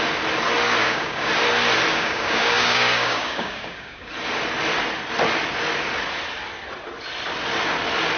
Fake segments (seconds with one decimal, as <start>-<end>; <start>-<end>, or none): 0.8-1.3; 1.9-4.1